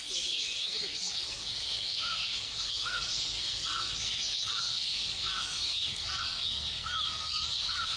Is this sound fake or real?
fake